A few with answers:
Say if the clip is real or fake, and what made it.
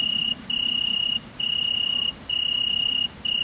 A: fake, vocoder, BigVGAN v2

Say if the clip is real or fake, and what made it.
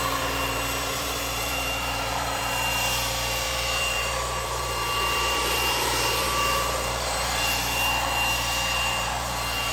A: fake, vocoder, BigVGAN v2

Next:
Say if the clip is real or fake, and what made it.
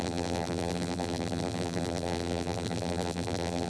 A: fake, vocoder, BigVGAN v2